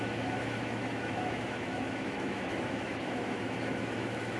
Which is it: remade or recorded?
remade